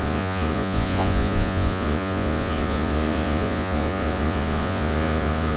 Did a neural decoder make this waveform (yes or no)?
yes